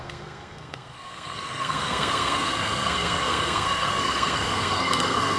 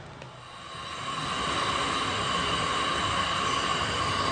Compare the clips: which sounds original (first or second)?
second